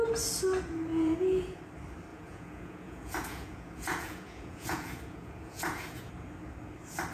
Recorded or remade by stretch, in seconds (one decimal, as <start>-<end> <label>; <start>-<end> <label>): 0.0-0.9 recorded; 0.9-1.6 remade; 1.6-2.1 recorded; 2.1-6.1 remade; 6.1-7.1 recorded